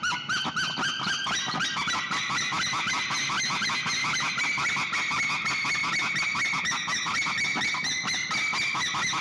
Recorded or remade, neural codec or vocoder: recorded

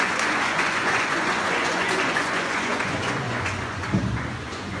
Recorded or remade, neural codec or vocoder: remade, vocoder, Vocos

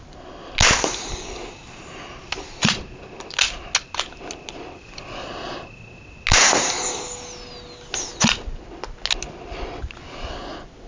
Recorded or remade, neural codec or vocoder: recorded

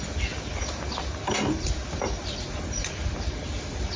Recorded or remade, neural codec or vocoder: recorded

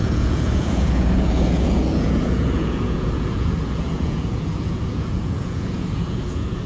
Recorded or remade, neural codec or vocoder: remade, vocoder, Vocos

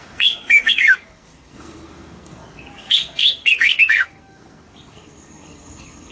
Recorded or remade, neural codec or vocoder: remade, codec, SNAC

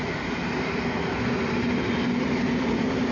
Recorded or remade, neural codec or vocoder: recorded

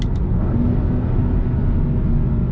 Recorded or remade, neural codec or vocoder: recorded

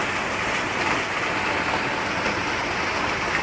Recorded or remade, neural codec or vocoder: recorded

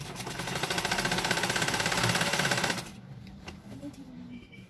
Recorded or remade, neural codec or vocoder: recorded